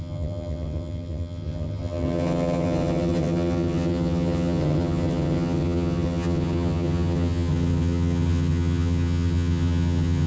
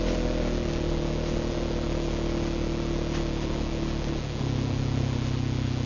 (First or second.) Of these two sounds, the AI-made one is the first